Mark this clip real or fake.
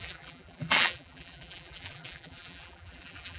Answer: fake